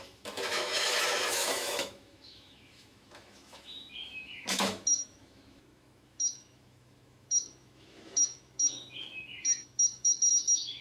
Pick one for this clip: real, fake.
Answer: fake